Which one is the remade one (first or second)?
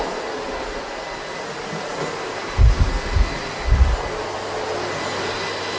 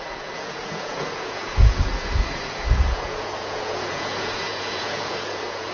second